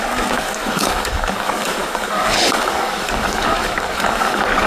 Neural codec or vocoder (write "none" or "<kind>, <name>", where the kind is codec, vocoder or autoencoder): codec, DAC